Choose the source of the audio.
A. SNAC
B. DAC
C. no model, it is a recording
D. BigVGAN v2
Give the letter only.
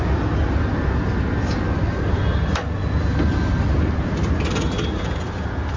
C